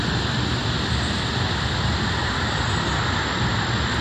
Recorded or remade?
recorded